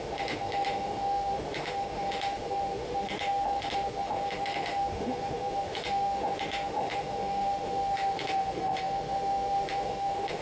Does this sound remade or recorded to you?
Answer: remade